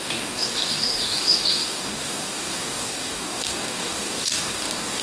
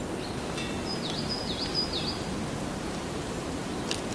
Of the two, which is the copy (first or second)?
first